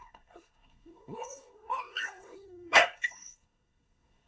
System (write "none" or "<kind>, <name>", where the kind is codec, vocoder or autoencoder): codec, SNAC